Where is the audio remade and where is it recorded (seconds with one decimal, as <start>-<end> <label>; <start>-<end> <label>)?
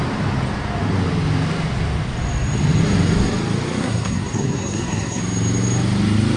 0.0-3.8 recorded; 3.8-5.2 remade; 5.2-6.4 recorded